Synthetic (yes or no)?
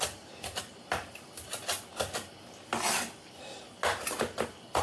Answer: no